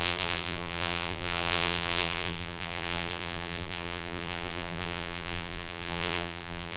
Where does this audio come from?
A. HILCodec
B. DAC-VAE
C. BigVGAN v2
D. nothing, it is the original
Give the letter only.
C